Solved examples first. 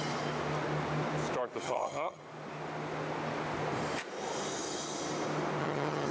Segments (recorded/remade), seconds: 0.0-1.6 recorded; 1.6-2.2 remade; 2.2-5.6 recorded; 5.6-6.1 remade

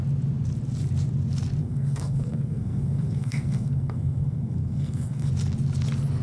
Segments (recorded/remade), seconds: 0.0-1.6 recorded; 1.6-5.3 remade; 5.3-6.2 recorded